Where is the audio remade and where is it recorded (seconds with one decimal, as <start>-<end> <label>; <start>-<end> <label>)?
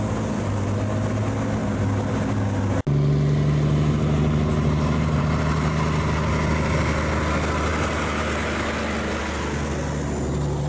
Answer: 0.0-10.7 recorded